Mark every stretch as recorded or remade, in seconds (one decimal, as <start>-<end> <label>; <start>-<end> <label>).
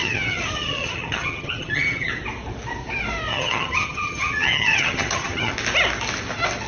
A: 0.0-2.1 remade; 2.1-3.3 recorded; 3.3-5.5 remade; 5.5-6.7 recorded